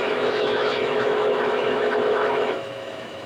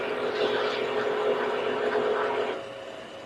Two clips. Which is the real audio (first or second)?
second